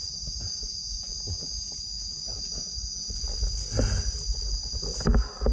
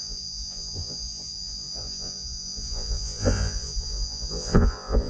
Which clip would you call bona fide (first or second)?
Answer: first